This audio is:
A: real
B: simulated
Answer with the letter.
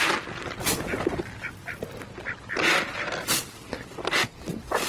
A